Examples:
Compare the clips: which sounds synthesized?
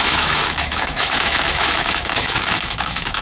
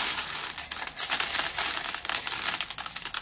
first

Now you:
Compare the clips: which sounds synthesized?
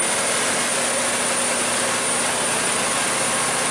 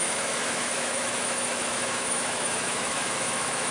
second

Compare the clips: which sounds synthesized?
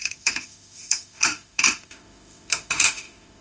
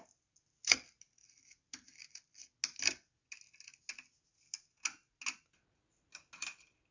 first